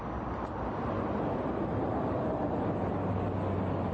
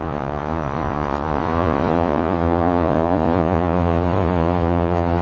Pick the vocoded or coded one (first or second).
second